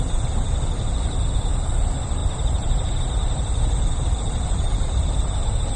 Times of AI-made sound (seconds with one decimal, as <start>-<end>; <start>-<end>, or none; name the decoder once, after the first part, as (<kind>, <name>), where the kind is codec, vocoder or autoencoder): 0.0-0.5 (vocoder, BigVGAN v2); 1.4-5.8

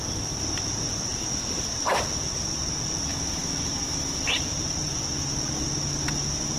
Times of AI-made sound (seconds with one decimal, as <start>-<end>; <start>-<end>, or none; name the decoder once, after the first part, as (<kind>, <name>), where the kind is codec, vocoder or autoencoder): 3.1-4.2 (autoencoder, DAC-VAE)

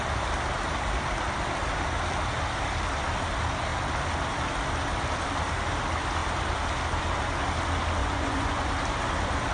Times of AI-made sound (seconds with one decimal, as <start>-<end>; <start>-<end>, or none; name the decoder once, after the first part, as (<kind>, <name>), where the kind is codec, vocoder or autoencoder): 8.0-8.7 (vocoder, Vocos)